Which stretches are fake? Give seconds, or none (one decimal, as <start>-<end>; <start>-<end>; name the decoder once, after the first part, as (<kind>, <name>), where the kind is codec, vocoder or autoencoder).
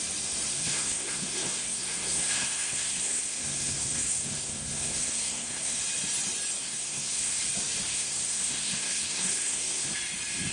0.5-5.8 (codec, SNAC); 6.6-7.4; 7.9-9.9